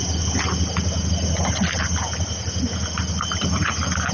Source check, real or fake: real